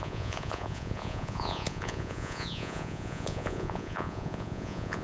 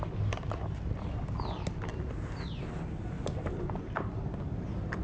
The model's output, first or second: first